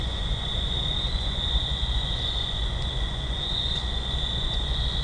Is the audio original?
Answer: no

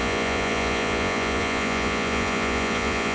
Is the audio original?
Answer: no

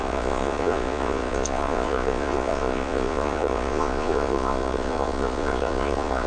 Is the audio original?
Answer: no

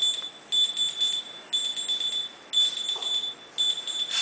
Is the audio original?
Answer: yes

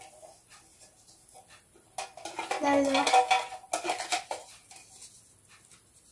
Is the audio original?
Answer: yes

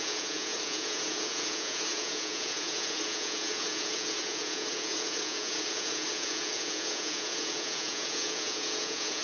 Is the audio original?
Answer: no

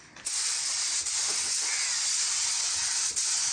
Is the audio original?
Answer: yes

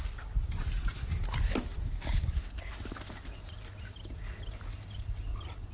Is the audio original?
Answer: yes